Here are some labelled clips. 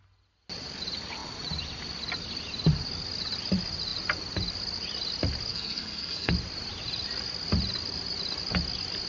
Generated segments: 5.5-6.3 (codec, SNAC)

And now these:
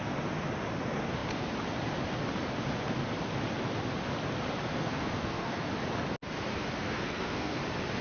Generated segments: 4.7-5.7 (codec, SNAC); 6.8-7.6

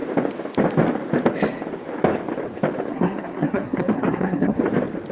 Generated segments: 2.9-4.6 (codec, SNAC)

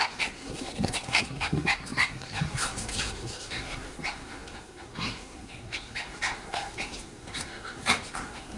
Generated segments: 0.0-8.6 (codec, SNAC)

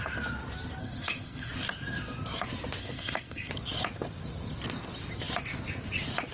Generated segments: 0.8-1.5 (codec, SNAC); 2.8-3.5

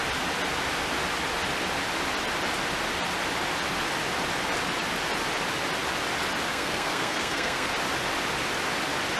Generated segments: 6.5-7.7 (codec, SNAC)